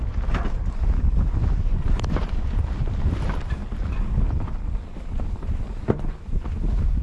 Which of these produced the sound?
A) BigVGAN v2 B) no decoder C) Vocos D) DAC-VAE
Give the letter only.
A